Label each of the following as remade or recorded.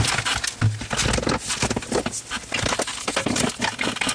recorded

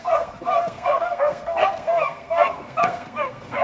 remade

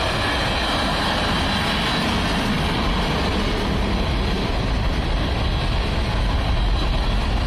recorded